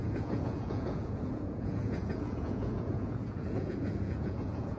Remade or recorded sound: remade